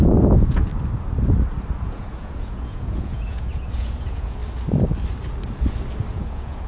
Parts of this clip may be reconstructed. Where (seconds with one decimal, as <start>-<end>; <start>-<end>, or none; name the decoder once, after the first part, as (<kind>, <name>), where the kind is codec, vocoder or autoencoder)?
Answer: 0.0-0.7 (vocoder, Vocos); 1.8-4.4; 6.1-6.7